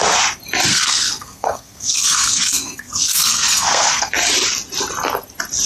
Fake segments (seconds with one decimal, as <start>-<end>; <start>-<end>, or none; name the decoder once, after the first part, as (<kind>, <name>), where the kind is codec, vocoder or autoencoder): 0.7-4.1 (codec, SNAC)